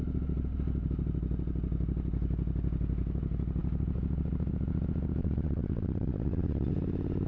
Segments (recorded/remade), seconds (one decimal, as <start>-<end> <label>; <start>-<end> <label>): 0.0-5.2 recorded; 5.2-6.7 remade; 6.7-7.3 recorded